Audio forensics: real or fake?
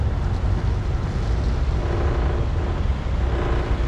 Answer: real